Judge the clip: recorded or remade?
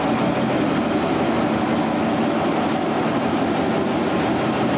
recorded